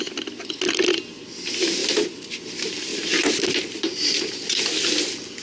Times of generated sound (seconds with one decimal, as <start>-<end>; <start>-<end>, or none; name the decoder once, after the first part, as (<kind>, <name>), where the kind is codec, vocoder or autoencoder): 1.8-2.4 (vocoder, BigVGAN v2); 2.9-4.6